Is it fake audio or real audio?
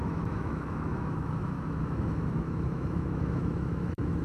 fake